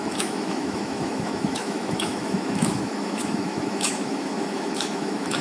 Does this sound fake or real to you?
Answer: fake